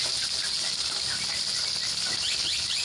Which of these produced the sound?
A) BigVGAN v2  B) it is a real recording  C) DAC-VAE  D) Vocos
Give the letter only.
A